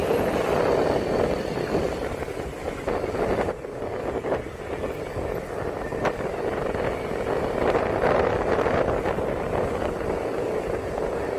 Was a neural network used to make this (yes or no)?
no